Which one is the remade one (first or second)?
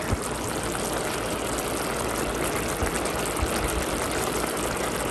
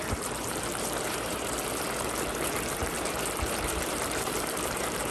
second